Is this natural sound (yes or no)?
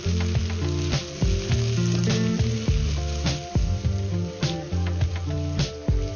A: yes